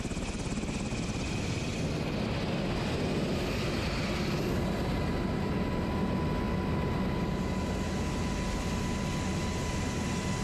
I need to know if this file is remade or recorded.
recorded